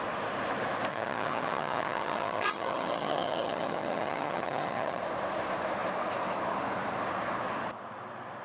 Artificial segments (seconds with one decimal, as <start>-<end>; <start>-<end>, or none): 0.9-5.0